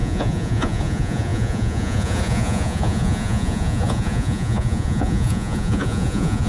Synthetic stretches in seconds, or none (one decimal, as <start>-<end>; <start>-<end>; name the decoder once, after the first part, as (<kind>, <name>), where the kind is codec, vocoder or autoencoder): 0.0-6.5 (vocoder, Vocos)